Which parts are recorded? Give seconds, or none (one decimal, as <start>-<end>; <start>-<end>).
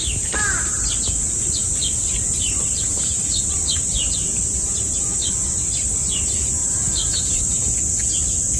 0.8-1.6; 4.2-6.6; 7.4-8.6